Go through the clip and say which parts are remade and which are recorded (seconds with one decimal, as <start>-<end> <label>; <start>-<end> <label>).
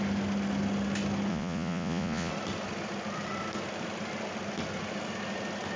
0.0-1.3 recorded; 1.3-2.3 remade; 2.3-5.8 recorded